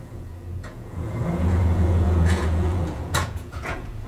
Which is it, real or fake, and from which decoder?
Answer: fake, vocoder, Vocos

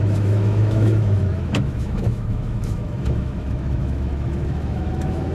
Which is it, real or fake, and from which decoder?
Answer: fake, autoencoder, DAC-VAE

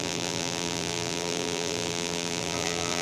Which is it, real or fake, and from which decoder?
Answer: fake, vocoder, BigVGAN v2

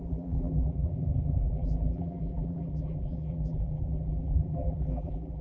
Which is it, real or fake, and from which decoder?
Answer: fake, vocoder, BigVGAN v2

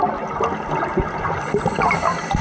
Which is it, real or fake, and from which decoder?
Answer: real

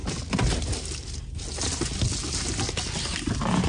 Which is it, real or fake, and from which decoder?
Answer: real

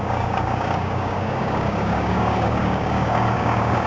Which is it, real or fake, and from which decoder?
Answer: fake, codec, DAC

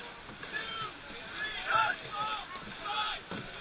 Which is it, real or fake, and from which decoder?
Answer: real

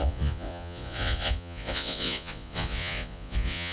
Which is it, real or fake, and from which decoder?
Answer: fake, vocoder, Vocos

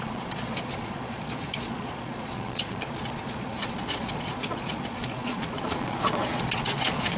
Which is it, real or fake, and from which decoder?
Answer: fake, vocoder, Vocos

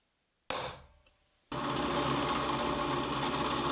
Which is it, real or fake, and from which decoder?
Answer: real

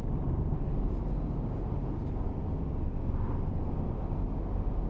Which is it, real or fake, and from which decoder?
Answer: real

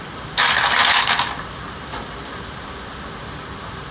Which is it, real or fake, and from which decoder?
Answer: fake, vocoder, BigVGAN v2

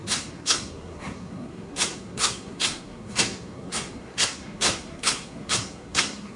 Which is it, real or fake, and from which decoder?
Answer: fake, codec, SNAC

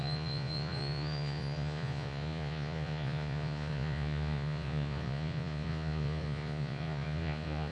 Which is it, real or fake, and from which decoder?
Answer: fake, vocoder, Vocos